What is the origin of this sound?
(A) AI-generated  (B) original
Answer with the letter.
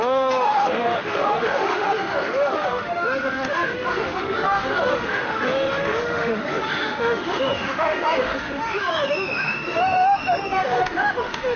A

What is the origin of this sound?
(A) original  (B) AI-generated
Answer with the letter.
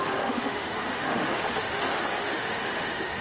B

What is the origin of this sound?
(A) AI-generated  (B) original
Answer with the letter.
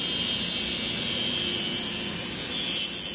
B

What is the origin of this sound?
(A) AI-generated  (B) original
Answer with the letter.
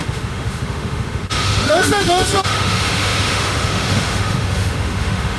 A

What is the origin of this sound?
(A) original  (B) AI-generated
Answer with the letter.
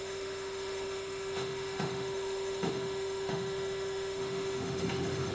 B